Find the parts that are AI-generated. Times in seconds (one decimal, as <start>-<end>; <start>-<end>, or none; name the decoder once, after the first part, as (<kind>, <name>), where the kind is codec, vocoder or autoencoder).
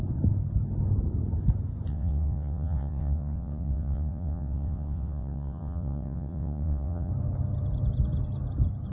1.9-7.1 (vocoder, WaveNeXt)